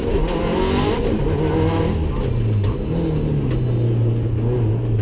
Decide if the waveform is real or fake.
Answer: real